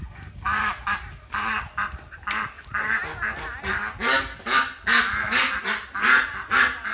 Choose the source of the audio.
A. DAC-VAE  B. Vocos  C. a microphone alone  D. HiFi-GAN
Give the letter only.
C